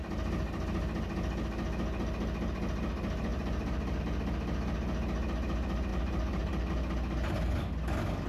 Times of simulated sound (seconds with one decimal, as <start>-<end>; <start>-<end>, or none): 3.3-4.0; 5.9-6.7